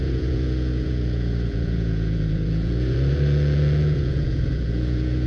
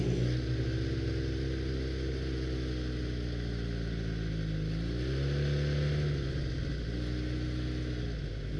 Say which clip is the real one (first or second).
second